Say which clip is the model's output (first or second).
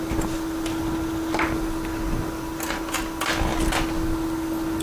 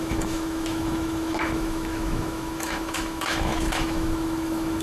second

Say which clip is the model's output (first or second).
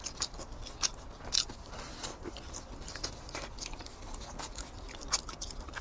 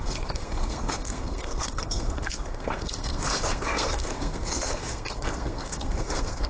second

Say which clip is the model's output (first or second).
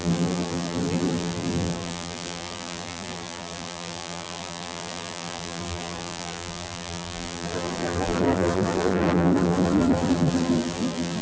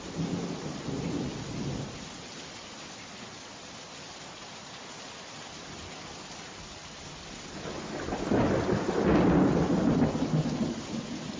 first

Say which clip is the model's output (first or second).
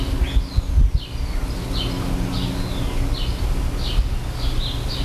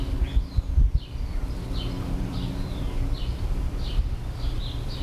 second